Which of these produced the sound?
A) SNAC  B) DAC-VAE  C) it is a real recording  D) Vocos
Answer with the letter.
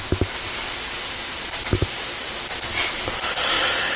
C